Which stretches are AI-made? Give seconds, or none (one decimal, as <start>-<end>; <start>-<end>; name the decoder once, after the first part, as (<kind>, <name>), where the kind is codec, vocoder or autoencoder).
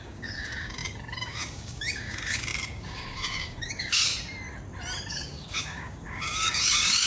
0.0-4.1 (codec, DAC); 5.1-7.1